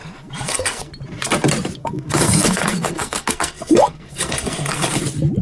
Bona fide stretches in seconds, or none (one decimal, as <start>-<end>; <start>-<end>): 0.9-1.8; 5.0-5.4